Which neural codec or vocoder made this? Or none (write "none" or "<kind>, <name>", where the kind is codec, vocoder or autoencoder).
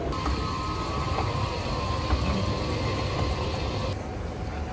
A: none